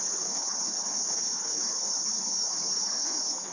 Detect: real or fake fake